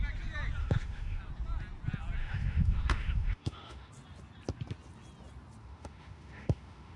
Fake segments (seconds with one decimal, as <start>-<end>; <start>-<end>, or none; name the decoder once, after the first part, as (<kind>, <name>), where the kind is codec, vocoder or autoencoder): 0.6-1.2 (autoencoder, DAC-VAE); 2.2-3.9; 5.6-7.0